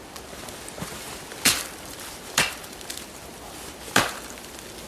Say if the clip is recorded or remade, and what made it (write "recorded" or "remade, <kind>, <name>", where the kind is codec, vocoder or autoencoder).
remade, vocoder, BigVGAN v2